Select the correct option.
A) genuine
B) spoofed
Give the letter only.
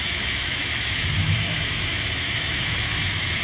B